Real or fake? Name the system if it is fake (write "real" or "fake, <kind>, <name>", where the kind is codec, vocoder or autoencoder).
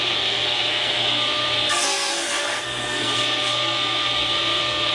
fake, codec, SNAC